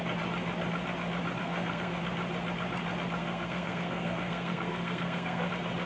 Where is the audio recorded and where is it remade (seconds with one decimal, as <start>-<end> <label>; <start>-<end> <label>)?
0.0-1.4 recorded; 1.4-2.0 remade; 2.0-3.2 recorded; 3.2-5.5 remade; 5.5-5.9 recorded